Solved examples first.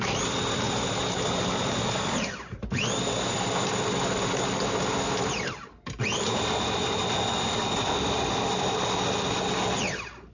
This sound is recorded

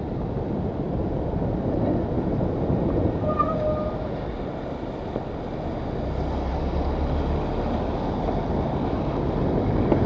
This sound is recorded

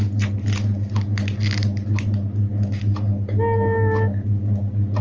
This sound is recorded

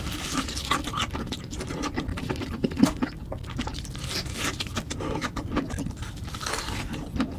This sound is recorded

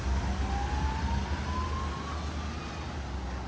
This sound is recorded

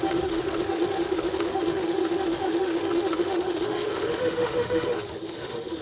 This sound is remade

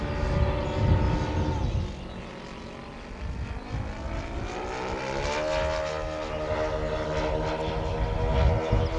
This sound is recorded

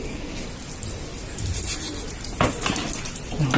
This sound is recorded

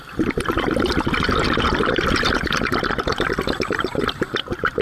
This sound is remade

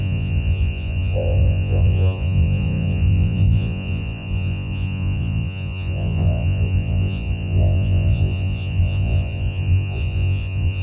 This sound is remade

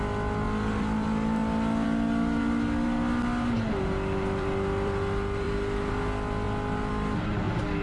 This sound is recorded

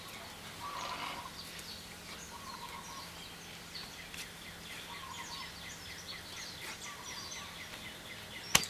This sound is recorded